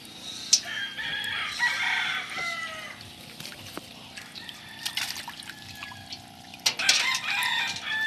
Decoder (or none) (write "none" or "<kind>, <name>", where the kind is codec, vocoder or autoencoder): none